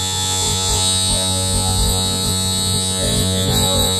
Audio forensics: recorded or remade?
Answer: remade